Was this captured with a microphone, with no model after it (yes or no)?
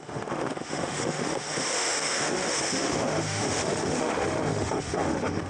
no